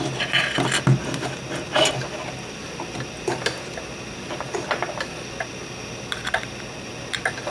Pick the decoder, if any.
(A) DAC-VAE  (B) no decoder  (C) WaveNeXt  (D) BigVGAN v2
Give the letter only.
B